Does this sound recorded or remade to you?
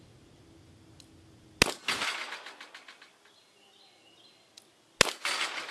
recorded